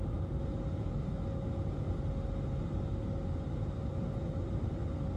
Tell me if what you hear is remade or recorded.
recorded